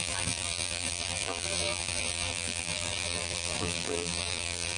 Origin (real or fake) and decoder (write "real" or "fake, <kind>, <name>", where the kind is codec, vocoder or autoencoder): fake, vocoder, BigVGAN v2